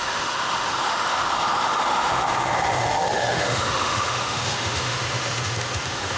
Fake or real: fake